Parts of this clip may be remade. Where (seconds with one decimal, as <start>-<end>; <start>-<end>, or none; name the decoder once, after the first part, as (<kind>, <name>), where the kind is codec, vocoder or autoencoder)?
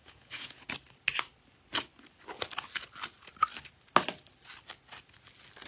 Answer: 0.0-0.7 (vocoder, Vocos)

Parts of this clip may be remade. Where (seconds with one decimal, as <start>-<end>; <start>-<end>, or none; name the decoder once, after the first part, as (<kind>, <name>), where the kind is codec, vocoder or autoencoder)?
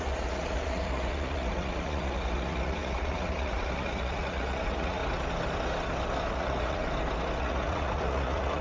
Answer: 0.0-5.0 (vocoder, Vocos); 6.3-6.8; 7.4-8.6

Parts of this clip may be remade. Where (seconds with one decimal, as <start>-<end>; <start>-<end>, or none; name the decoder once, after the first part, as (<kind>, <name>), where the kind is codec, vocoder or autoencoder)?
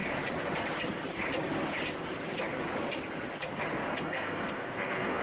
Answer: 3.9-5.2 (codec, SNAC)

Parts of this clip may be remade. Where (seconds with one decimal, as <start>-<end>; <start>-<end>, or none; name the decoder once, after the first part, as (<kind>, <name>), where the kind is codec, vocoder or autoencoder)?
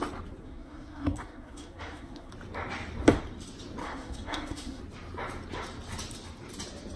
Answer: 0.4-2.3 (codec, SNAC); 3.8-4.8